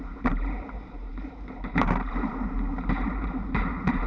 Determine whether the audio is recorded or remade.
remade